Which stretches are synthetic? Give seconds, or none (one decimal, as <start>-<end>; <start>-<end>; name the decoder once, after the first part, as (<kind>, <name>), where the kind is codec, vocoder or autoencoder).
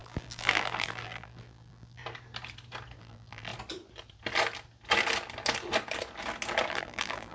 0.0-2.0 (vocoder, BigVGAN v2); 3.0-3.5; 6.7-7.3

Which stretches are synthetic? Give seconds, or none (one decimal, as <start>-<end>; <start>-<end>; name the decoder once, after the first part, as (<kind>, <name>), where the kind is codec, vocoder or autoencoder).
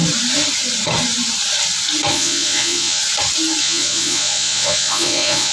2.1-3.0 (vocoder, Vocos); 3.6-5.5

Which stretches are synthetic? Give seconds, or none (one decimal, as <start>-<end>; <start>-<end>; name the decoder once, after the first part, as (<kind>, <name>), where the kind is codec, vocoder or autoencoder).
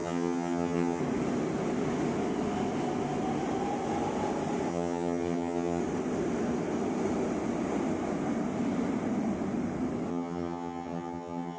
0.0-1.0 (vocoder, HiFi-GAN); 4.7-5.8; 10.1-11.6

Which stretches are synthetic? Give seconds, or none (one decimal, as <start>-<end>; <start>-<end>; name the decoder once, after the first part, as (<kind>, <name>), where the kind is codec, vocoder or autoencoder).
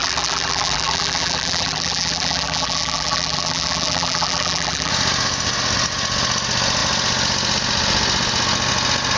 0.0-4.9 (vocoder, BigVGAN v2)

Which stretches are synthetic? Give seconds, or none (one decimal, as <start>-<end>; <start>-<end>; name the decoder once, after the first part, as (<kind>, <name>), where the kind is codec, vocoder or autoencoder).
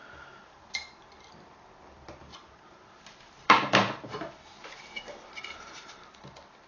0.0-0.6 (vocoder, BigVGAN v2); 2.3-6.3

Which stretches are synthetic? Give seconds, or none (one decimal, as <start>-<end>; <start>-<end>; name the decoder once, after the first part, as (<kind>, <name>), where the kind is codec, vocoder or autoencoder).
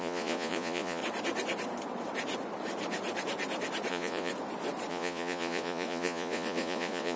0.0-1.0 (vocoder, Vocos); 3.9-4.3; 4.9-7.2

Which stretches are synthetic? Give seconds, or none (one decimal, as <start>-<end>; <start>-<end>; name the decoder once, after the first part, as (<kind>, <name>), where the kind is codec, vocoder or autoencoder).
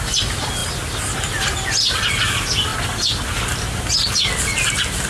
none